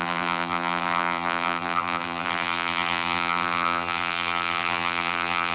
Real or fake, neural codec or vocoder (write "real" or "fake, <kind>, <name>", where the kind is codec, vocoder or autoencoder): fake, vocoder, BigVGAN v2